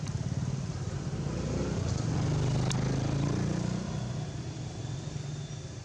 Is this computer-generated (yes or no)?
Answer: no